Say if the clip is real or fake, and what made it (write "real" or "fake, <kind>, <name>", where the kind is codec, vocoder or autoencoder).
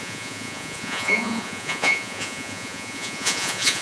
fake, vocoder, Vocos